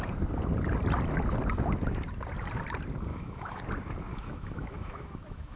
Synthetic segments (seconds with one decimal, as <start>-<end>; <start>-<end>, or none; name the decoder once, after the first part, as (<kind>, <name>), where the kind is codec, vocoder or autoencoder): 3.1-3.6 (autoencoder, DAC-VAE); 4.1-5.6